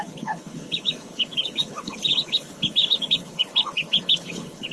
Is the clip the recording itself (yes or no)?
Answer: no